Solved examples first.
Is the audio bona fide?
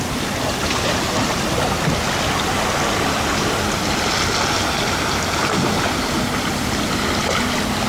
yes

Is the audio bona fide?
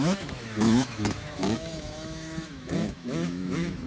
no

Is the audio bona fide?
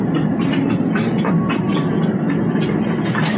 yes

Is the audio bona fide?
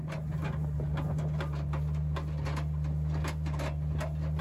yes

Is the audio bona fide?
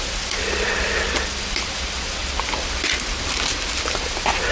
yes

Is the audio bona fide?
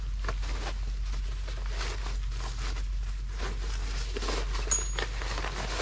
yes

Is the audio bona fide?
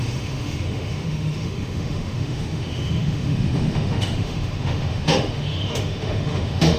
no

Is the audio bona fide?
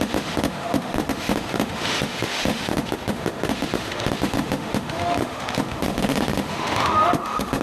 no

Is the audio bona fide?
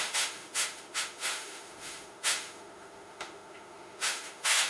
no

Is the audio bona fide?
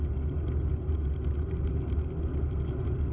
yes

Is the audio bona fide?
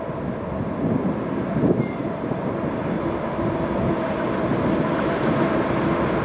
yes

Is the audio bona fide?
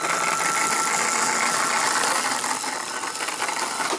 yes